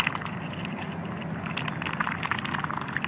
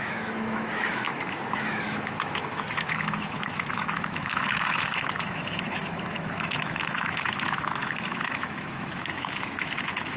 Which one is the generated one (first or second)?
second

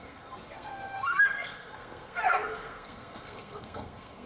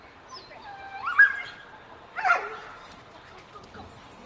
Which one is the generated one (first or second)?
first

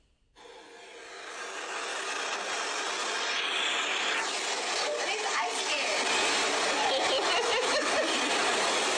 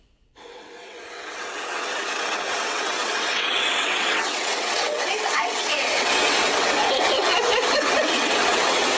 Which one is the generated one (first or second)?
second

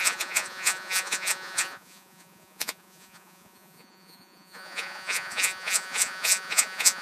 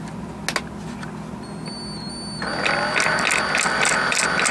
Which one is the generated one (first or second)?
first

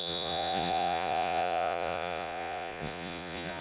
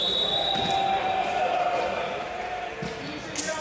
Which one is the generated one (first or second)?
first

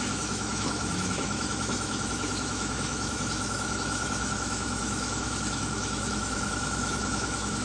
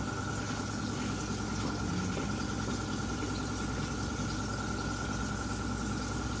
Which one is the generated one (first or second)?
first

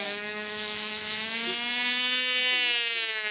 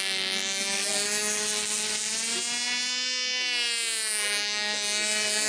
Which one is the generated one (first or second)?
first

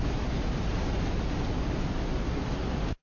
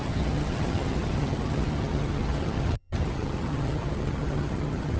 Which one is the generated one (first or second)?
second